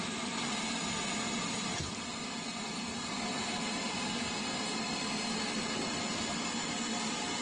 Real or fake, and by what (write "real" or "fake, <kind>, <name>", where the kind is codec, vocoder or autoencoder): real